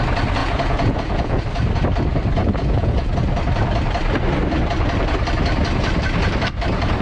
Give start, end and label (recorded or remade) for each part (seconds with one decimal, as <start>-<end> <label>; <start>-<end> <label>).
0.0-0.4 recorded; 0.4-1.4 remade; 1.4-2.4 recorded; 2.4-3.1 remade; 3.1-7.0 recorded